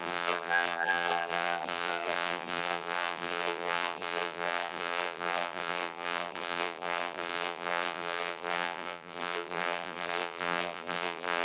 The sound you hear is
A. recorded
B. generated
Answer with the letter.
B